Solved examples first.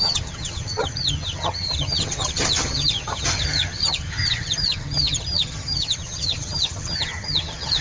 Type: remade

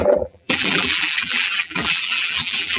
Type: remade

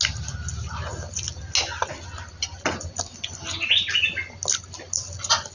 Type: recorded